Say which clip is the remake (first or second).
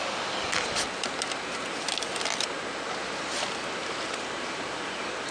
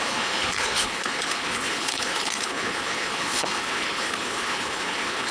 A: second